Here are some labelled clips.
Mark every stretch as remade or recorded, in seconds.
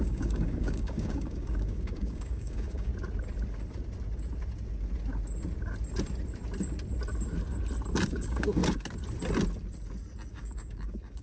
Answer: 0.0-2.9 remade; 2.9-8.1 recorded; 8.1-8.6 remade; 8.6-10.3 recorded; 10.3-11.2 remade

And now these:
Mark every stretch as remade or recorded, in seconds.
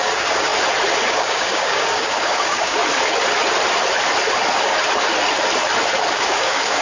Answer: 0.0-0.5 remade; 0.5-1.1 recorded; 1.1-2.8 remade; 2.8-6.1 recorded; 6.1-6.8 remade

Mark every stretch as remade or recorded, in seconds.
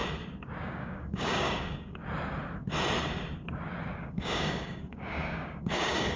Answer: 0.0-0.6 recorded; 0.6-2.0 remade; 2.0-4.0 recorded; 4.0-6.2 remade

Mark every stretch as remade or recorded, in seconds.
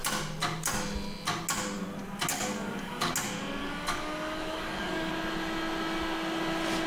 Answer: 0.0-2.3 recorded; 2.3-3.1 remade; 3.1-3.6 recorded; 3.6-5.1 remade; 5.1-6.9 recorded